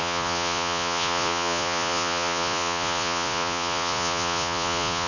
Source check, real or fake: fake